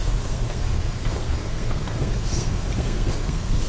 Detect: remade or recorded remade